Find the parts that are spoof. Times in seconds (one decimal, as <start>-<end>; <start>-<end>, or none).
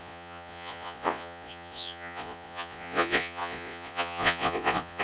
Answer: 0.0-5.0